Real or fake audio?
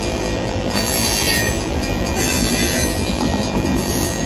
fake